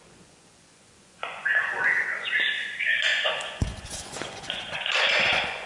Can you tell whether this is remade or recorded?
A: remade